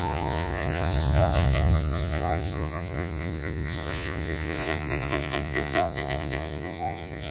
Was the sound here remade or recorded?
remade